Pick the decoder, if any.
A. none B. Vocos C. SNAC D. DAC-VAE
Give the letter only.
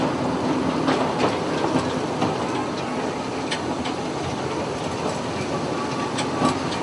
A